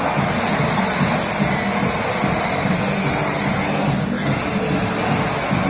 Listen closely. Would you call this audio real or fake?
real